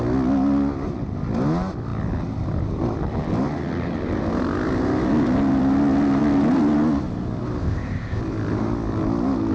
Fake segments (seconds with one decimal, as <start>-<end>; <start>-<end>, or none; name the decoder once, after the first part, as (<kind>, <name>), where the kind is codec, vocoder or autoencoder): 7.6-8.2 (codec, ZipCodec)